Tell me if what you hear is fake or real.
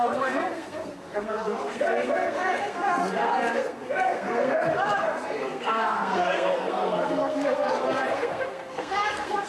fake